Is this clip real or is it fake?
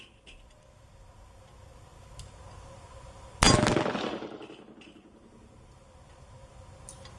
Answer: real